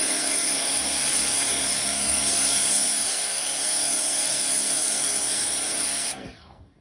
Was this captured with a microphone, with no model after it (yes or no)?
no